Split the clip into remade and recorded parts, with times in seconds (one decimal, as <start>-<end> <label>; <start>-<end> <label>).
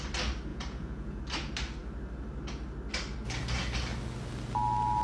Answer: 0.0-0.5 recorded; 0.5-1.2 remade; 1.2-5.0 recorded